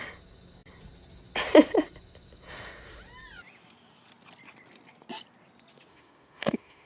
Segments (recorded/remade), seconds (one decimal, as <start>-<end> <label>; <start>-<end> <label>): 0.0-5.9 recorded; 5.9-6.9 remade